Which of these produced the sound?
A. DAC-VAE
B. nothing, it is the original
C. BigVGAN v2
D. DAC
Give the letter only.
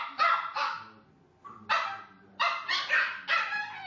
B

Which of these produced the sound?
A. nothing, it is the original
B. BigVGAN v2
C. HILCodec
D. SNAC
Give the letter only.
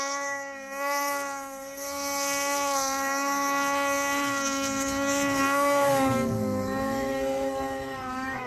D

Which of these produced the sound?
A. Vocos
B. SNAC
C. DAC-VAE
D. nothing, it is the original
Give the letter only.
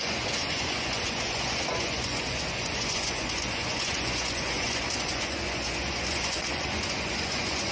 A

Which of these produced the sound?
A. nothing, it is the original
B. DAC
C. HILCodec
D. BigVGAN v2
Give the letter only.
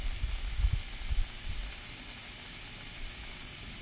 A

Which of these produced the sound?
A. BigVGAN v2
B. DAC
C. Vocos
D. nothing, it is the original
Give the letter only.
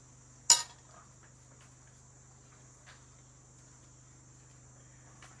D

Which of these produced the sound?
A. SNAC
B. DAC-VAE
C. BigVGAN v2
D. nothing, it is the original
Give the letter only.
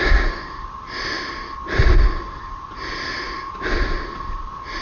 D